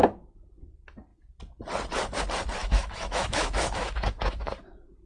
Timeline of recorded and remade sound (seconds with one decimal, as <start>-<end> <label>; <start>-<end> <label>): 0.0-2.6 recorded; 2.6-4.5 remade; 4.5-5.1 recorded